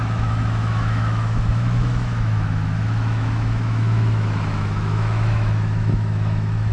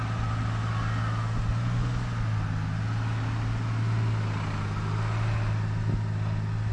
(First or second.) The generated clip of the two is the first